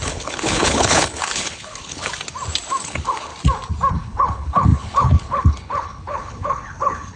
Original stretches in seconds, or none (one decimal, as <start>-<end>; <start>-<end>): 2.1-2.8; 3.3-3.9

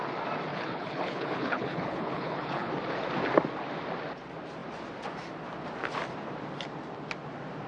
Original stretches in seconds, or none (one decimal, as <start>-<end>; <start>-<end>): 0.0-0.5; 2.7-7.7

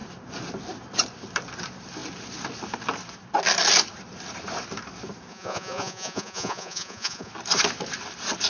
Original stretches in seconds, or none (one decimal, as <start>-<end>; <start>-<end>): 0.0-5.3; 7.3-8.5

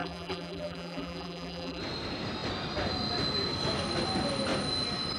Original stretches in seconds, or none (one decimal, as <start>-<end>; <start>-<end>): 1.8-5.2